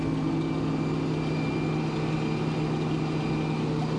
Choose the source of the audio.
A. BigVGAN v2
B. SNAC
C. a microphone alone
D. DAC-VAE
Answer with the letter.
C